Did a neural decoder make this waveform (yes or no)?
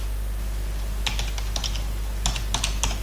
no